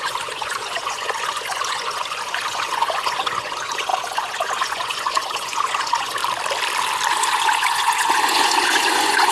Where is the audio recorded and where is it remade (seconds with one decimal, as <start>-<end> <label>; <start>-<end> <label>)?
0.0-6.2 remade; 6.2-7.1 recorded; 7.1-9.3 remade